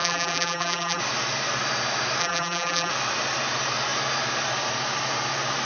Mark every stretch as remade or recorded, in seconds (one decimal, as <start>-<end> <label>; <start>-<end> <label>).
0.0-1.0 remade; 1.0-2.2 recorded; 2.2-2.9 remade; 2.9-5.6 recorded